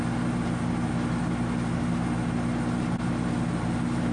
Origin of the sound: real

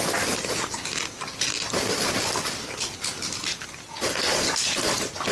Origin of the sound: real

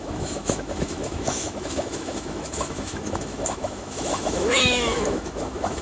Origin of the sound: fake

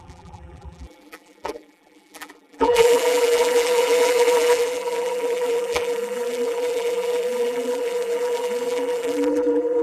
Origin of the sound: fake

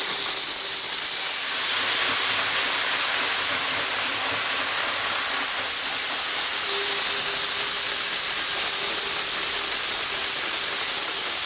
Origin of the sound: real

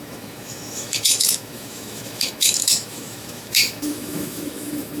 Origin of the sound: fake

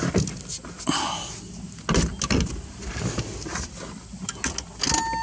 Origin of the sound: real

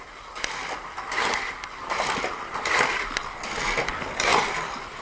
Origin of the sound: real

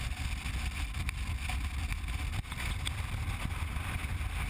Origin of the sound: real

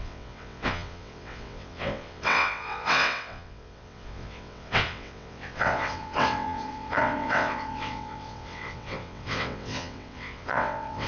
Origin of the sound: fake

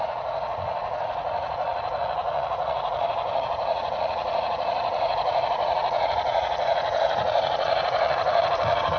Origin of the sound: fake